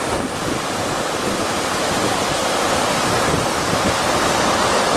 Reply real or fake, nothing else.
real